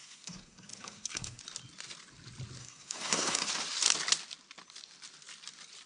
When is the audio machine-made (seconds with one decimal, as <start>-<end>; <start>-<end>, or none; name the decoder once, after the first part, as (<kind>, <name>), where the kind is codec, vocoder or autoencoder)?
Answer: 0.0-1.4 (codec, SNAC); 2.6-3.5